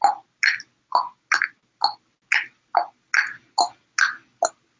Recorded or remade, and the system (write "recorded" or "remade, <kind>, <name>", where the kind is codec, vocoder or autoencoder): recorded